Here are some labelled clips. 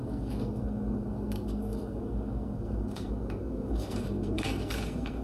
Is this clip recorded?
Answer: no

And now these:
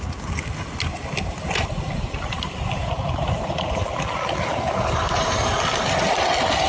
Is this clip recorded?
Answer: yes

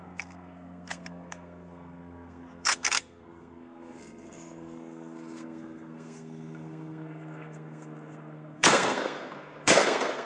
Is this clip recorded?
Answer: no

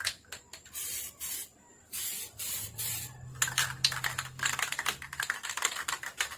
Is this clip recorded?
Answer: yes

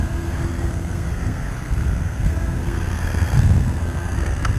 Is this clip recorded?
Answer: no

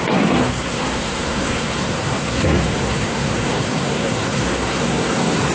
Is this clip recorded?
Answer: no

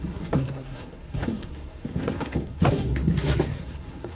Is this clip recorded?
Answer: no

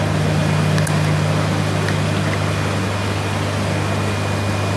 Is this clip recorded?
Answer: yes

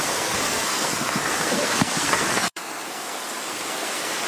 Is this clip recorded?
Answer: no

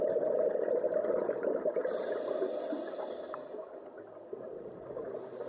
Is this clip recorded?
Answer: yes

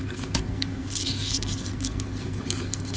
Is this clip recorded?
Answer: no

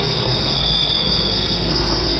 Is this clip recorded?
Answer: no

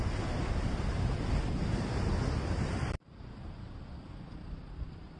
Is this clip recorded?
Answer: yes